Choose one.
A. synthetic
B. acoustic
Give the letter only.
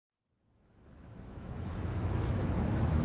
A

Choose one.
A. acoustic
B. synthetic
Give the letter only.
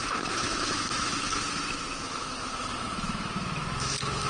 B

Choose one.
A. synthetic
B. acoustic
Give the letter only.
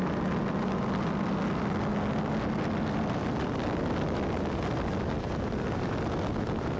B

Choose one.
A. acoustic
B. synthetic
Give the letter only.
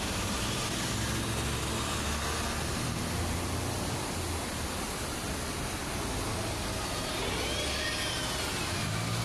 A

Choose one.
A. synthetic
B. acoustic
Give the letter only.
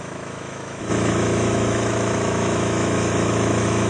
A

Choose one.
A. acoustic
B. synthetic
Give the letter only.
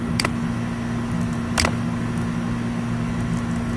A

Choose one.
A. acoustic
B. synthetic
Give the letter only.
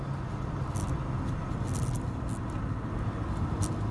A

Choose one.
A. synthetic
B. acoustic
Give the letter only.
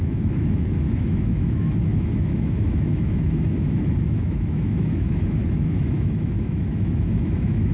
A